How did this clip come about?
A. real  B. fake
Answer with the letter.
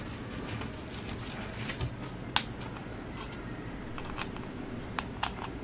A